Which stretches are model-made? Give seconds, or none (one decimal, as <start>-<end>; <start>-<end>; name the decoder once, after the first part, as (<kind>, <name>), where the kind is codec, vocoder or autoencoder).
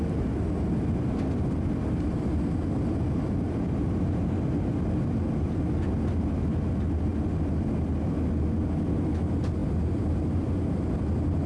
none